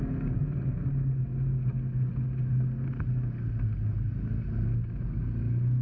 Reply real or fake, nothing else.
real